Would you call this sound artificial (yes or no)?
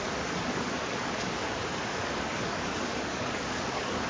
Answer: yes